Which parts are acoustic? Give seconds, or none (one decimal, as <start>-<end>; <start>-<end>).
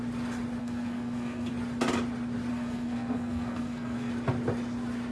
0.0-0.6; 1.5-2.5; 4.1-5.1